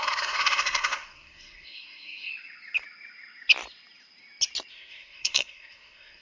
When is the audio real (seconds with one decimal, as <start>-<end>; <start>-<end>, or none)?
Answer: 2.3-4.7

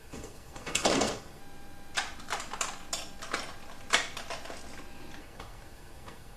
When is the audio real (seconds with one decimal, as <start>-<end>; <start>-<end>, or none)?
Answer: 1.4-5.2